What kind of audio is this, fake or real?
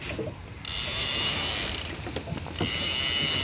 real